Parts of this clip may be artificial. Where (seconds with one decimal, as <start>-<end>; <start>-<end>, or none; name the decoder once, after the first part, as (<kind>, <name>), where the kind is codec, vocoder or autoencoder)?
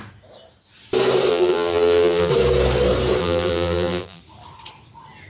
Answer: 1.3-2.3 (vocoder, BigVGAN v2); 3.2-4.2